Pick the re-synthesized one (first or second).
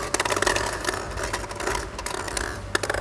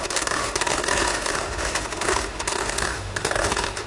second